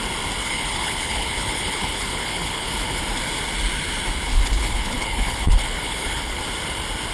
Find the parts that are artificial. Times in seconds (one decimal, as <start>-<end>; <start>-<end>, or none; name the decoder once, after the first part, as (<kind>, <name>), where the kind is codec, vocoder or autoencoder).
0.4-3.0 (codec, HILCodec); 4.3-6.4